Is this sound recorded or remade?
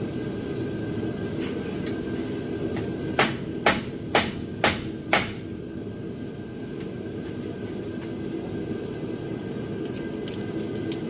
recorded